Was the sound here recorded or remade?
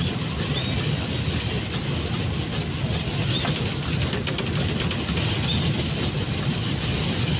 recorded